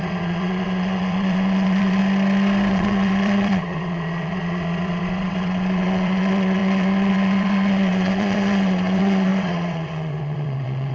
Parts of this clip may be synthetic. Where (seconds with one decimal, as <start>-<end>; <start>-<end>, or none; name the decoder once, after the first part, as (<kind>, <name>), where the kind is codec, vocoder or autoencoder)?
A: 0.0-2.0 (vocoder, WaveNeXt); 2.7-10.9